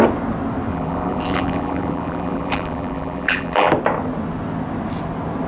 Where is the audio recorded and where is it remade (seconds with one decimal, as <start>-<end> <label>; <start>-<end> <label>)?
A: 0.0-0.7 recorded; 0.7-3.7 remade; 3.7-5.5 recorded